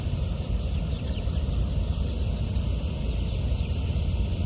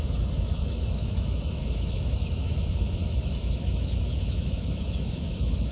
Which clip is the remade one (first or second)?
second